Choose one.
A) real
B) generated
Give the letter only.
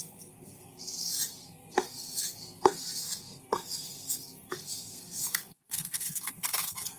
B